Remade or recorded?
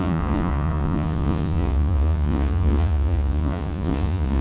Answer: remade